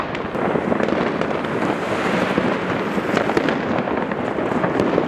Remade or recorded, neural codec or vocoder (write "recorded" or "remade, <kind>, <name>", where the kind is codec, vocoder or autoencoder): remade, vocoder, BigVGAN v2